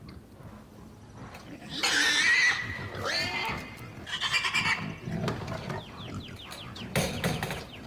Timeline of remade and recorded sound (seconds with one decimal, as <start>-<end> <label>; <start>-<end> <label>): 0.0-7.9 recorded